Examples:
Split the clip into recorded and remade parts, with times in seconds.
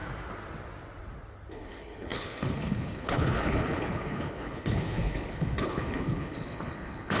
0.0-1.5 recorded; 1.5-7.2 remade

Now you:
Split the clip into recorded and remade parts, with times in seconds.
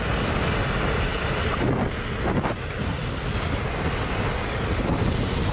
0.0-5.5 recorded